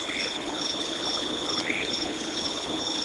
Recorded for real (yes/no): no